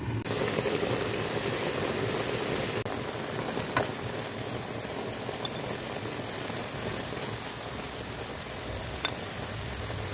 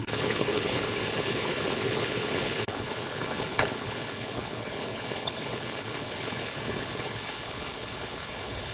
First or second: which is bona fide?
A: first